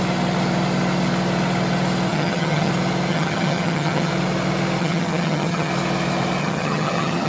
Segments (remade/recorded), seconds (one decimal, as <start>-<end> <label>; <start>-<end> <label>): 0.0-2.1 recorded; 2.1-2.7 remade; 2.7-3.1 recorded; 3.1-4.1 remade; 4.1-4.8 recorded; 4.8-5.7 remade; 5.7-6.4 recorded; 6.4-7.3 remade